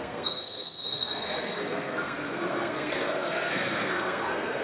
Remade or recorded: remade